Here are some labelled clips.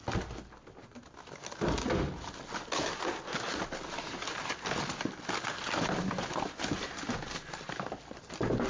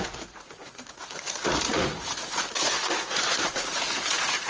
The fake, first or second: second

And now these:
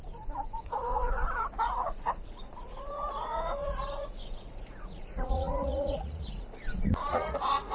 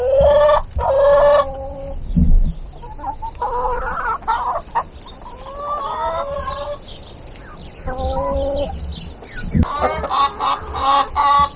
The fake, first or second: first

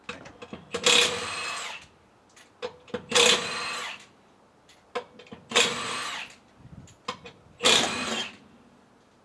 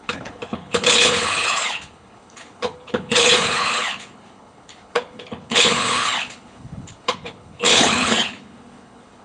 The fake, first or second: second